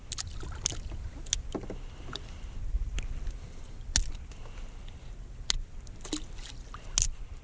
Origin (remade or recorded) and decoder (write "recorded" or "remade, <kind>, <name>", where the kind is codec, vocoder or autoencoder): recorded